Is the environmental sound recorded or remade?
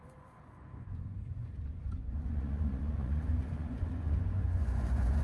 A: remade